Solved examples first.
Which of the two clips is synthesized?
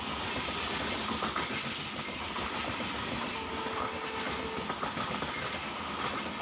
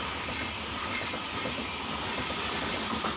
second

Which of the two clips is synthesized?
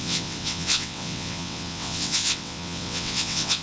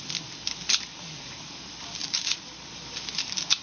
first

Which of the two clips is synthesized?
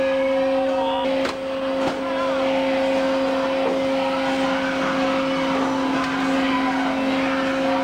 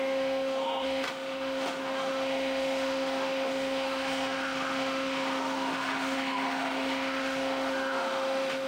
second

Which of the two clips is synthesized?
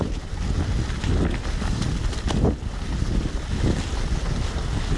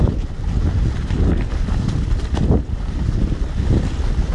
second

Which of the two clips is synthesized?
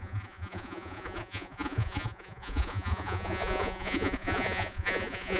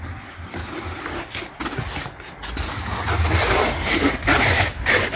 first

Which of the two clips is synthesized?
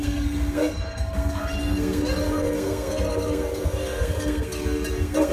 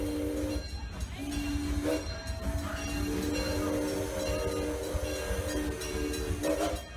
first